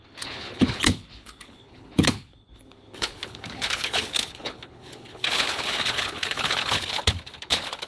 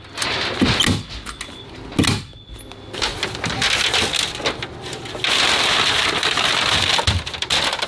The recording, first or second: second